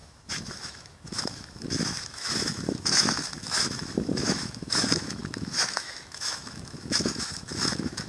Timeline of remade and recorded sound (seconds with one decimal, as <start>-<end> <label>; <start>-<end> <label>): 0.0-8.1 remade